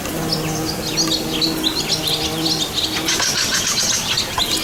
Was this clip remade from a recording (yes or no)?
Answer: no